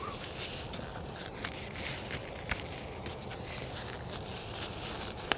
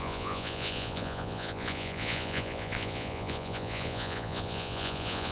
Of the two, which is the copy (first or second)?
second